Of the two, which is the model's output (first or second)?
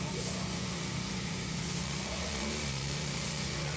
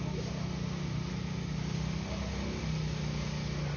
first